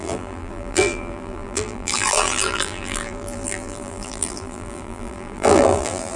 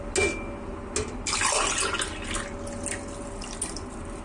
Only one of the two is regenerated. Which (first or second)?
first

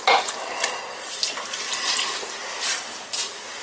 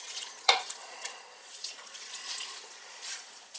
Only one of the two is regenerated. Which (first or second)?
second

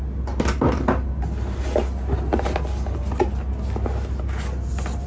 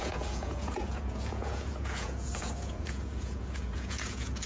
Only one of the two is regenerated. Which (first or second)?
second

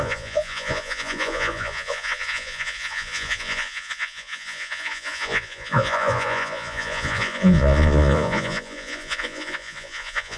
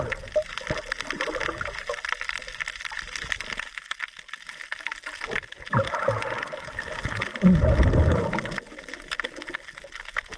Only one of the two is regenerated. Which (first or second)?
first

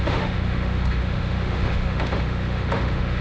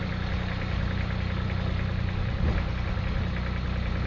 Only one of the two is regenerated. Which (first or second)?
first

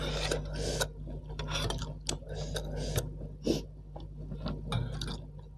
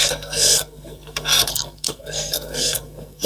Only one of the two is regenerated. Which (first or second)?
second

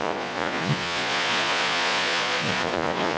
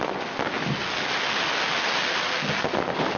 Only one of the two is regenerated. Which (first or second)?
first